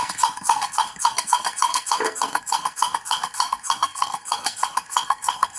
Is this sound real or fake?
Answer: fake